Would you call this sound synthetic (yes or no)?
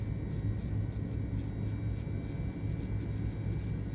no